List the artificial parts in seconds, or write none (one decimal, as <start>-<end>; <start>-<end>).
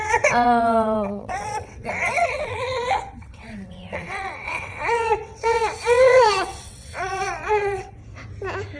0.0-8.0